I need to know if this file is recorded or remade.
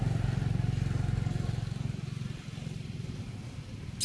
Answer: recorded